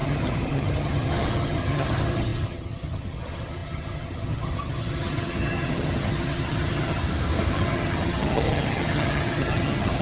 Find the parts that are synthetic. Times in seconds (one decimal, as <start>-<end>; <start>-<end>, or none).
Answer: 0.0-7.0; 7.5-10.0